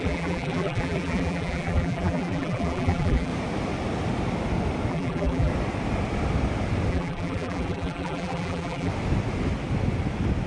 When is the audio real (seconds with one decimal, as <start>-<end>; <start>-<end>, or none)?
3.3-4.9; 5.5-6.9; 8.9-10.5